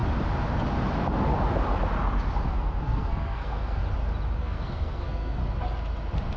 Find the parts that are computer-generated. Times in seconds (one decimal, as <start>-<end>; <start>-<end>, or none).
2.5-3.8; 4.4-5.4